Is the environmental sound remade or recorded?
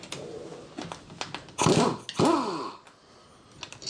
recorded